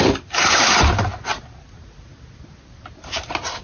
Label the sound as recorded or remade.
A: recorded